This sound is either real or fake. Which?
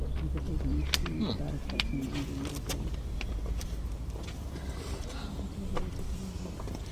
real